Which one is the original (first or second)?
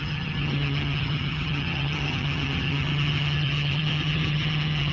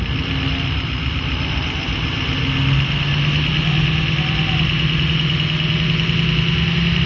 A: second